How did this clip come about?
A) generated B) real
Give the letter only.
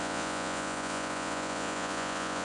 A